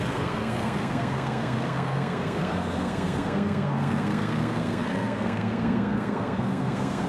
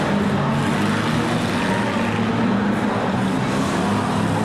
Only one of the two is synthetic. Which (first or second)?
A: first